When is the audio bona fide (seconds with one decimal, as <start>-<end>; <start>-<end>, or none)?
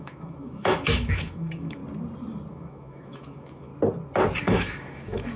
1.8-2.5; 3.7-4.4